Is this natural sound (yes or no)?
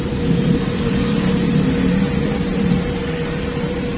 no